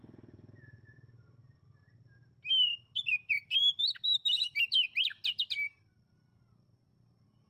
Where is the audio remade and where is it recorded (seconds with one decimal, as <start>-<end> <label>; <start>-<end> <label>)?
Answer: 0.0-3.4 recorded; 3.4-7.5 remade